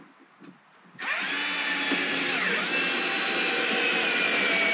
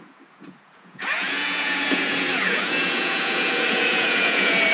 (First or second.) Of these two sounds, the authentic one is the first